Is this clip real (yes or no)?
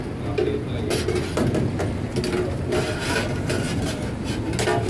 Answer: yes